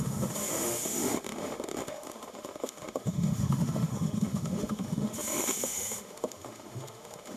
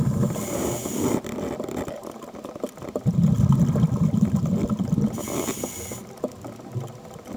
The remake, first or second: first